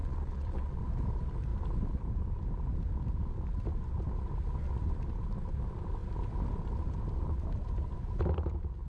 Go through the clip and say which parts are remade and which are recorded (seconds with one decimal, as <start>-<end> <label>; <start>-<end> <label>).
0.0-0.8 remade; 0.8-8.9 recorded